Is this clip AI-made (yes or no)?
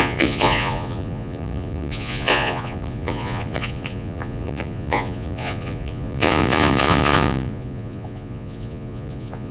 yes